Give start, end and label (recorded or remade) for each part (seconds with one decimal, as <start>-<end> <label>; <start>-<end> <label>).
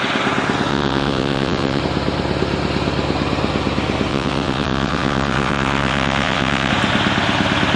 0.0-0.7 recorded; 0.7-1.8 remade; 1.8-4.1 recorded; 4.1-6.7 remade; 6.7-7.8 recorded